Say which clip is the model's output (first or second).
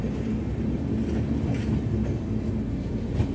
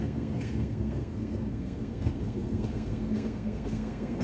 second